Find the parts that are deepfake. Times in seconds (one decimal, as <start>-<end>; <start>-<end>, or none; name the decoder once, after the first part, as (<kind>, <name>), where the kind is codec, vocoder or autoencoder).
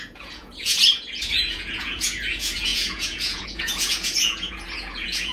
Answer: 0.0-5.3 (vocoder, Vocos)